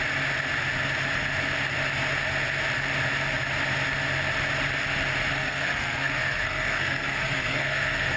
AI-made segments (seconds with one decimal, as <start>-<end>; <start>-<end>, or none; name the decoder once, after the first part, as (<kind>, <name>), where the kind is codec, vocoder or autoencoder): 5.3-8.2 (codec, SNAC)